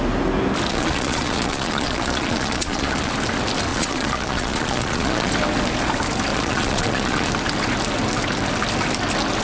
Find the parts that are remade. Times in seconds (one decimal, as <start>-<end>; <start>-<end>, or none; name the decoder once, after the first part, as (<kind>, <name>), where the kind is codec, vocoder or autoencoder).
0.7-3.1 (vocoder, Vocos); 3.7-5.3; 6.3-7.3